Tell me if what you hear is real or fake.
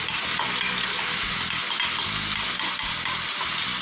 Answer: real